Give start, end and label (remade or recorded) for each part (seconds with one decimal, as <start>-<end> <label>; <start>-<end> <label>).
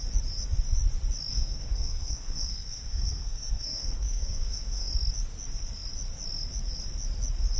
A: 0.0-1.3 recorded; 1.3-4.9 remade; 4.9-7.6 recorded